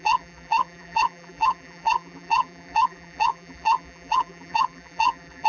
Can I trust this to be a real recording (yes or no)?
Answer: no